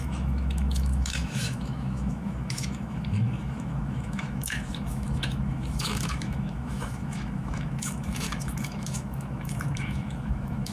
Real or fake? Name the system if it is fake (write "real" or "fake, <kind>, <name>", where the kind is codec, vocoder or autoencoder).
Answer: fake, autoencoder, DAC-VAE